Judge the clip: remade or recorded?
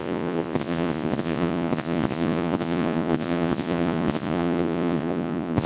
remade